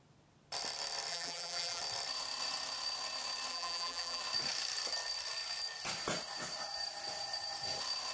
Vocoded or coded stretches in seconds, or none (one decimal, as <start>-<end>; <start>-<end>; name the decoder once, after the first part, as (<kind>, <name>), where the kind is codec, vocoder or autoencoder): 1.1-1.8 (vocoder, BigVGAN v2); 3.5-4.2